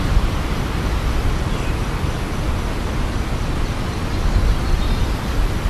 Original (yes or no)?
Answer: yes